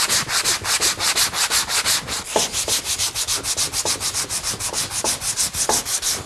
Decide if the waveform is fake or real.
real